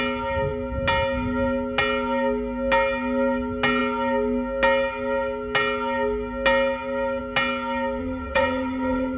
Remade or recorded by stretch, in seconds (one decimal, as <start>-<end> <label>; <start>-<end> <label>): 0.0-8.0 recorded; 8.0-9.2 remade